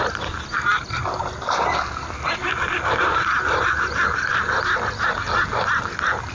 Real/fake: real